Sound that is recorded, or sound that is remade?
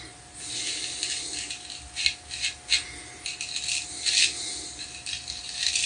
recorded